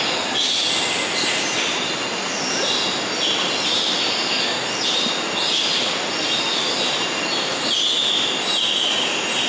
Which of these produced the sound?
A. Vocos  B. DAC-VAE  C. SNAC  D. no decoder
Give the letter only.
D